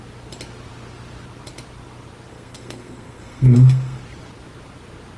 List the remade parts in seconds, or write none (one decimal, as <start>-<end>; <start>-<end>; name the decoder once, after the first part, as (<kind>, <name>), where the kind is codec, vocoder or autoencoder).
2.3-4.0 (codec, SNAC)